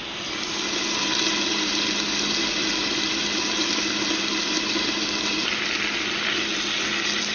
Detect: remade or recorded recorded